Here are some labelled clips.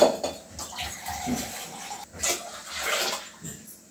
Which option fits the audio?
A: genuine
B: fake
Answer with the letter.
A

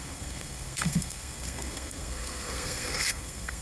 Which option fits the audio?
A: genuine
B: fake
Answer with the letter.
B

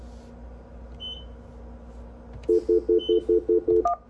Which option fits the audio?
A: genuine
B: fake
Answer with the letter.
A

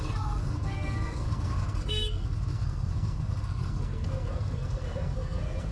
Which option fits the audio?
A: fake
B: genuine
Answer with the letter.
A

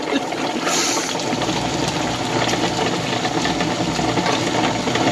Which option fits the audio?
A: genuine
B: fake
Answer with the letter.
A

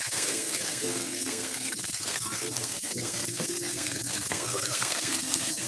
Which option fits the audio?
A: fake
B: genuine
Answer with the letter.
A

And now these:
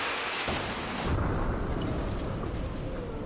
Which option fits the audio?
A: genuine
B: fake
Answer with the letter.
A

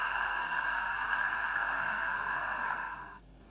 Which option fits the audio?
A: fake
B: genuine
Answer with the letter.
A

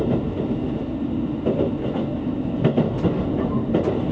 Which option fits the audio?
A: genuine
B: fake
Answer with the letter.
A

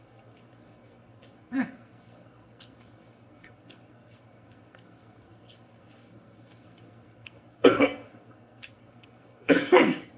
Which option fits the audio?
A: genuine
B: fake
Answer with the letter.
B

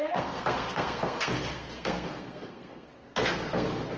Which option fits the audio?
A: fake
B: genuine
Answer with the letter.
A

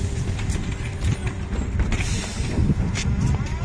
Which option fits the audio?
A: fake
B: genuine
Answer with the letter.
B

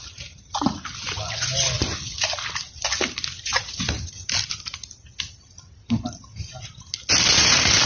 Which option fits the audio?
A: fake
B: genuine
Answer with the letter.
B